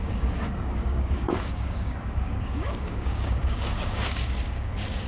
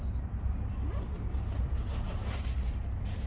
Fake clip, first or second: first